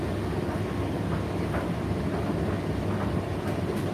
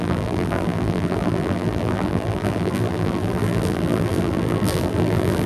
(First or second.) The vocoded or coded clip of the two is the second